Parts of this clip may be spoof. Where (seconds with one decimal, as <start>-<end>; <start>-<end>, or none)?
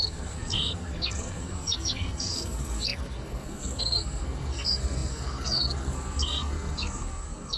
0.0-7.6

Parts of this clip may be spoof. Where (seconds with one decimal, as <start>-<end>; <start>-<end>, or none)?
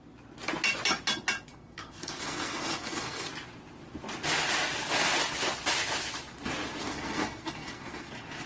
1.5-3.3; 6.8-8.1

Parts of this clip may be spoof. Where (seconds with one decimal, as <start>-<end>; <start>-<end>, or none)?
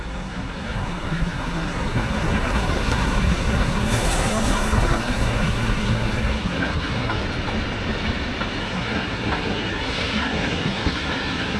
0.0-7.2; 8.6-11.6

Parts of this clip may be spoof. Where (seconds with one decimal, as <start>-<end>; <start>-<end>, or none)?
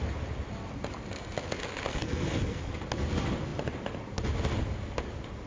1.9-2.7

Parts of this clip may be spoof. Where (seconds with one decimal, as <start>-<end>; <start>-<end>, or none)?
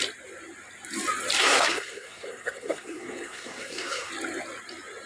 1.4-4.1